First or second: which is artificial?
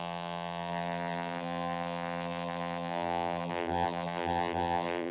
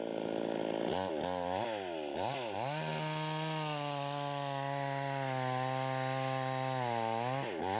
first